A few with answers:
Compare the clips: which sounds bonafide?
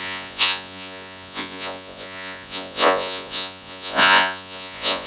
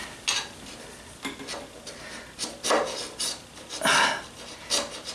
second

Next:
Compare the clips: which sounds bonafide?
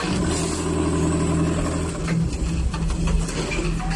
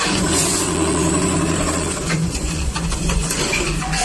first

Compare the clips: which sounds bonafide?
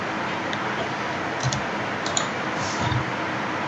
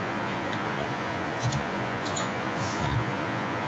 first